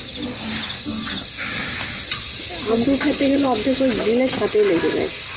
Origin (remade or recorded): recorded